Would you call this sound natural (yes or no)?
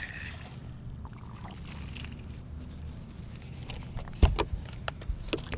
yes